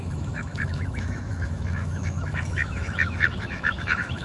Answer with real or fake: fake